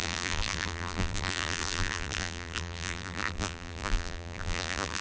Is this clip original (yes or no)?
no